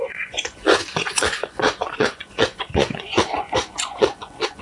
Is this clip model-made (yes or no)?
yes